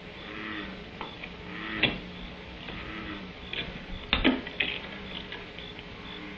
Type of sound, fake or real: real